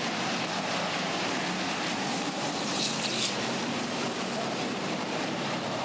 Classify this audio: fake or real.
fake